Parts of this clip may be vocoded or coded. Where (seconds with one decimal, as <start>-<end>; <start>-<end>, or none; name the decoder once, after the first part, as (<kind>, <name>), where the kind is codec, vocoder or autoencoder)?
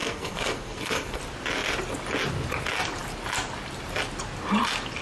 0.0-1.2 (codec, SNAC)